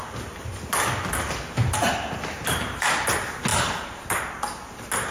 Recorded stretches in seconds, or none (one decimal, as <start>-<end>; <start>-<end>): 0.0-3.5; 4.2-5.1